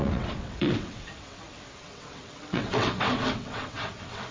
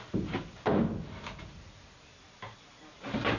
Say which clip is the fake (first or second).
first